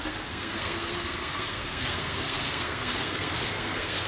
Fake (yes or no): yes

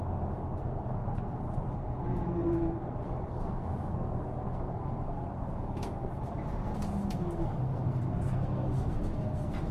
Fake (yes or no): yes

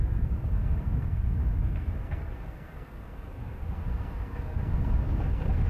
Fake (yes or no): yes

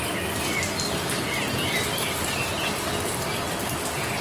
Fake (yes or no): no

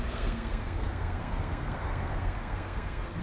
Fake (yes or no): yes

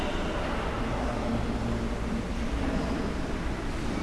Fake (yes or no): no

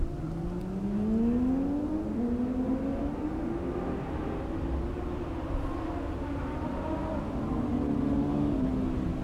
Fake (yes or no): no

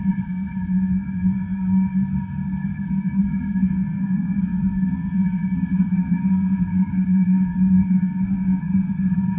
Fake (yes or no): yes